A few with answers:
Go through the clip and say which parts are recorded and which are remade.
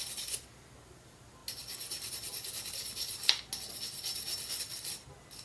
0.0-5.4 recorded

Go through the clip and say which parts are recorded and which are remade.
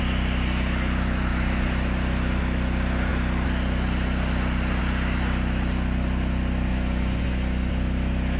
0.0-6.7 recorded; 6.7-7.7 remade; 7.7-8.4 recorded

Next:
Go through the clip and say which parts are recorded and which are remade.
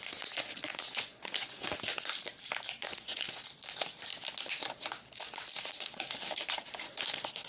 0.0-0.7 recorded; 0.7-1.8 remade; 1.8-2.8 recorded; 2.8-3.4 remade; 3.4-7.5 recorded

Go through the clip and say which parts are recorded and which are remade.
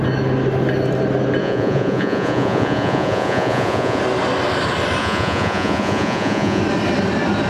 0.0-1.4 recorded; 1.4-4.0 remade; 4.0-5.0 recorded; 5.0-6.6 remade; 6.6-7.5 recorded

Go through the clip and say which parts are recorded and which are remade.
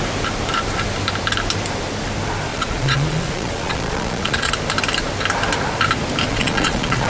0.0-2.5 recorded; 2.5-4.5 remade; 4.5-6.3 recorded; 6.3-7.1 remade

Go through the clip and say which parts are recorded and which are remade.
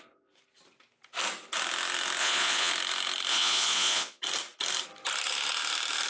0.0-2.2 recorded; 2.2-2.7 remade; 2.7-3.3 recorded; 3.3-4.2 remade; 4.2-6.1 recorded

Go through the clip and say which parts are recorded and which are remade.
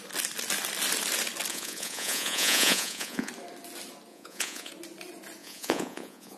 0.0-1.5 recorded; 1.5-3.3 remade; 3.3-4.1 recorded; 4.1-4.7 remade; 4.7-5.4 recorded; 5.4-6.4 remade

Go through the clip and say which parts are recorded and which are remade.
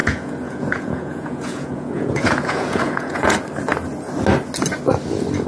0.0-3.3 remade; 3.3-5.5 recorded